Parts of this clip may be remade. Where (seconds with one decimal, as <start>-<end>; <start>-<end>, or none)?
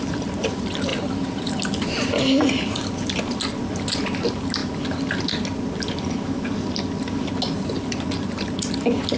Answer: 0.9-1.6